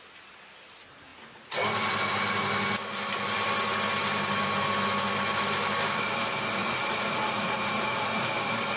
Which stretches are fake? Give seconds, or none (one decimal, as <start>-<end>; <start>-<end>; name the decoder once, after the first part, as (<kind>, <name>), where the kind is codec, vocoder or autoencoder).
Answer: 6.6-8.3 (vocoder, Vocos)